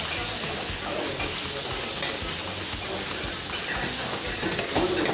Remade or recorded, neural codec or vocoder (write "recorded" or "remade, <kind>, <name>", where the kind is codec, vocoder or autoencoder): recorded